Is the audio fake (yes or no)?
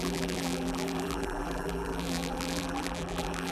yes